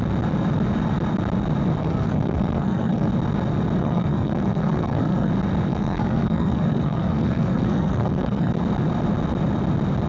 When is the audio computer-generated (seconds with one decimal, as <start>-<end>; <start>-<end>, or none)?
1.8-3.1; 3.8-5.3; 5.7-8.5